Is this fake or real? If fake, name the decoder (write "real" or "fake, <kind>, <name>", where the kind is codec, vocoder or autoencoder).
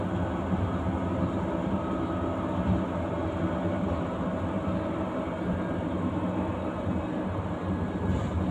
real